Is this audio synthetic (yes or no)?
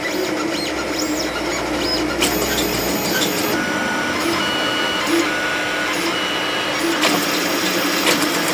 no